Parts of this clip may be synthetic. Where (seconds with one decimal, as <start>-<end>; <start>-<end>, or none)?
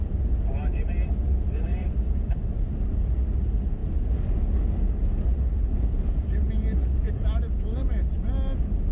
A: 1.7-2.7